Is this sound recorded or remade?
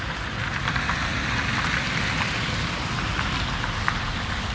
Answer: recorded